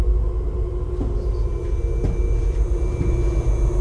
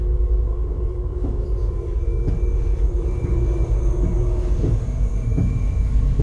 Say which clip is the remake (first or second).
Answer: second